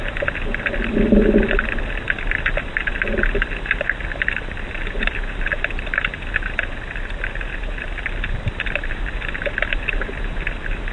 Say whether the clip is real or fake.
real